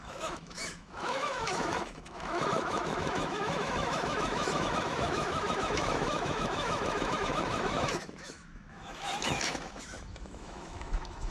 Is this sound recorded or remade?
remade